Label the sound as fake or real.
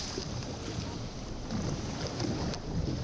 fake